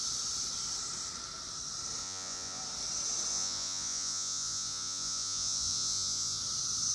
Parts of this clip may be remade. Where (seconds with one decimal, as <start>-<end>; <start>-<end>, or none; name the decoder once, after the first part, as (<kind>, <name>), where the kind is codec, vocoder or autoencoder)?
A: 2.0-2.6 (vocoder, Vocos); 3.3-6.4